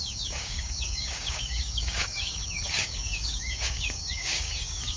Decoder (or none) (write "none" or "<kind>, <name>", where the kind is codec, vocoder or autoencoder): codec, DAC